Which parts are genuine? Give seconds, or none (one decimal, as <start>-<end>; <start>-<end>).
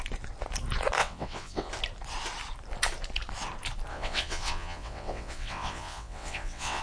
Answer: 0.0-1.0; 1.7-3.9